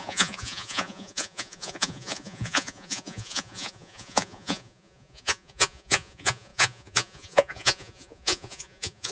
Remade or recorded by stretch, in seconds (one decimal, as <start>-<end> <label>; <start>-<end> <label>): 0.0-9.1 remade